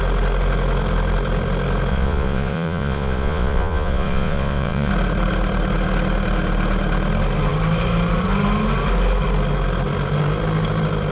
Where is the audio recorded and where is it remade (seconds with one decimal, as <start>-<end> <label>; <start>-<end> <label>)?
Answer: 0.0-1.9 recorded; 1.9-4.9 remade; 4.9-11.1 recorded

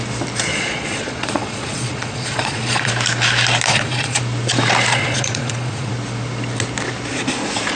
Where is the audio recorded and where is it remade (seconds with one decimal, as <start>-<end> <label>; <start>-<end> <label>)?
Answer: 0.0-0.5 recorded; 0.5-2.9 remade; 2.9-3.7 recorded; 3.7-4.2 remade; 4.2-4.9 recorded; 4.9-5.9 remade; 5.9-7.7 recorded

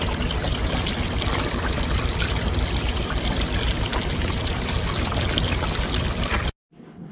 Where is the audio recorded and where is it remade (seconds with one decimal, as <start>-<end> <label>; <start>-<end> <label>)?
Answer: 0.0-7.1 recorded